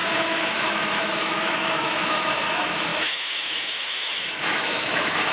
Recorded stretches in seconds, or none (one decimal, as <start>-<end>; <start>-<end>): none